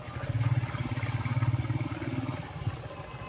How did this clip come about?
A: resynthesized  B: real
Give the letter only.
B